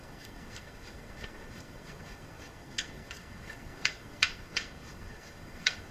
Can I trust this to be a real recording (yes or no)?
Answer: no